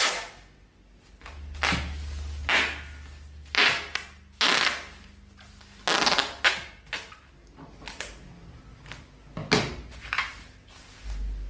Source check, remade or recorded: recorded